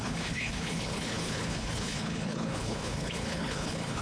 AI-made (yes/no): yes